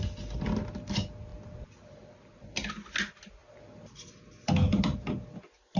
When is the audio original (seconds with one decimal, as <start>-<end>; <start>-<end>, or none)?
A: 0.0-5.8